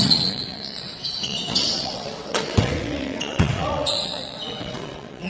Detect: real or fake fake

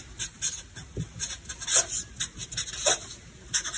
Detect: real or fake real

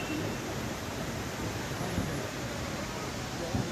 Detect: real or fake real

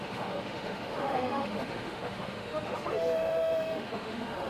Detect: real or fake fake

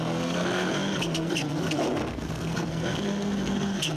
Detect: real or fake fake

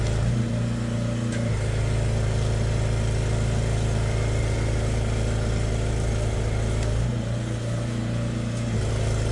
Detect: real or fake real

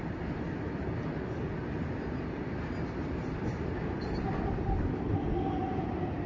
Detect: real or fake real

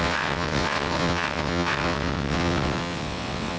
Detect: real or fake fake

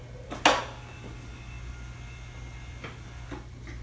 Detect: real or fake real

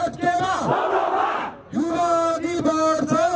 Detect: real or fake real